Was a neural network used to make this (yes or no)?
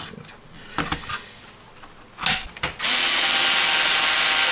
no